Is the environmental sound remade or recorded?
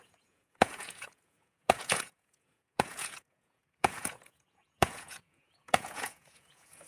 remade